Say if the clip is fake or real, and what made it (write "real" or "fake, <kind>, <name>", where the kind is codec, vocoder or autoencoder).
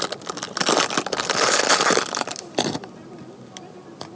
real